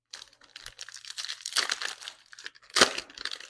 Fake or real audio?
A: fake